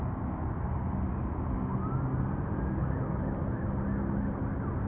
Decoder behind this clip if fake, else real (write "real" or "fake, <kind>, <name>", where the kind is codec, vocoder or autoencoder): real